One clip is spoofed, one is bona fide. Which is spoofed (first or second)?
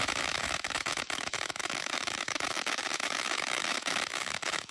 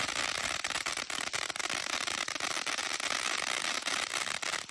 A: first